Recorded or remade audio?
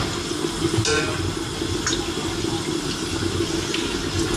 recorded